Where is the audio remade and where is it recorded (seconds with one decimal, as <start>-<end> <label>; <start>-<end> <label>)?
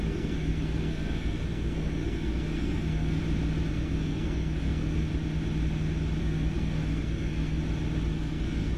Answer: 0.0-3.2 remade; 3.2-3.7 recorded; 3.7-5.1 remade; 5.1-6.2 recorded; 6.2-7.6 remade; 7.6-8.1 recorded; 8.1-8.8 remade